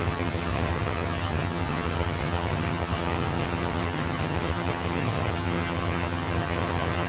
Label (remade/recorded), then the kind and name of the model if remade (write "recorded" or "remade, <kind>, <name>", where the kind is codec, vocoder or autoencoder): remade, vocoder, HiFi-GAN